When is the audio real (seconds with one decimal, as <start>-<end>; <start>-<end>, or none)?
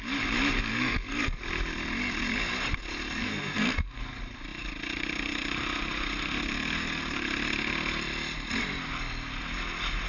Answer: 0.0-0.7; 1.4-3.2; 4.0-10.1